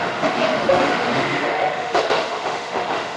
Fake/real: fake